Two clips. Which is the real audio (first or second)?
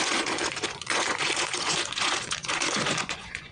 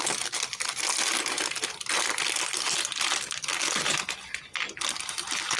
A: second